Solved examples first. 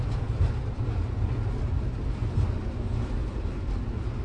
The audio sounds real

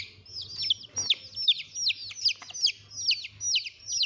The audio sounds real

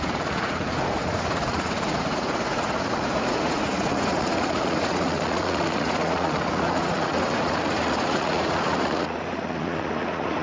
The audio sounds fake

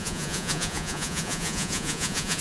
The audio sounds fake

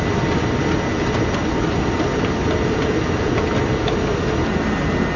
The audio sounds real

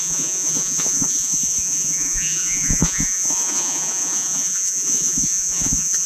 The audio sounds fake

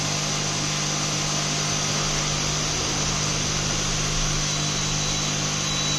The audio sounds real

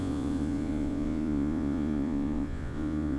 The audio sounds fake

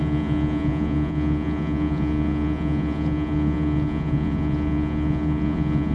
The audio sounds fake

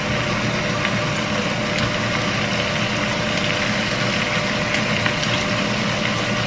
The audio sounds real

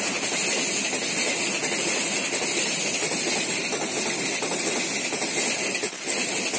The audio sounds real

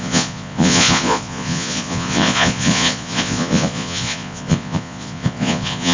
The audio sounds fake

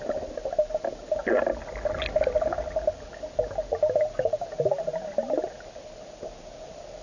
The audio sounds real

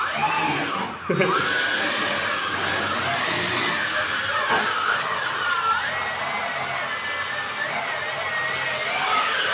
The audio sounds real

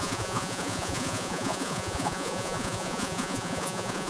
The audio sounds fake